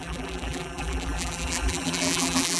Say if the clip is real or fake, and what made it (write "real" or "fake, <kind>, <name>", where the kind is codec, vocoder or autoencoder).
fake, vocoder, BigVGAN v2